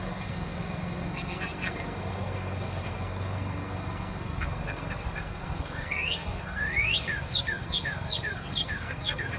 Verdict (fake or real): fake